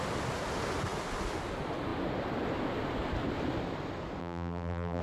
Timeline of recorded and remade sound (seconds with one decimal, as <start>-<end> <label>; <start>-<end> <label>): 0.0-4.2 recorded; 4.2-5.0 remade